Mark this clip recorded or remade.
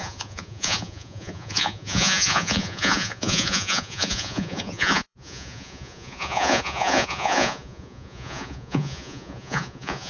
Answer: remade